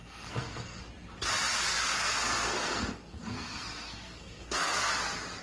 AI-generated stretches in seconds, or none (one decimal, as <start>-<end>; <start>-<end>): 0.0-0.8; 1.7-4.9

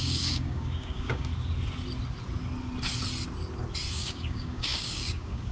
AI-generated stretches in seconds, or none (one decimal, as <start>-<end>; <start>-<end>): 0.0-1.3; 3.9-5.5